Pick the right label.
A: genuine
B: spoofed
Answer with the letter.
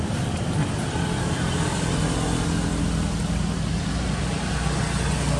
A